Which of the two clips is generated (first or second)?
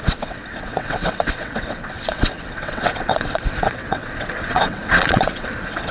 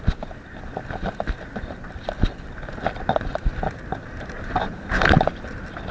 first